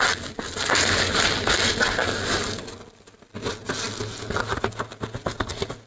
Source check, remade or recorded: recorded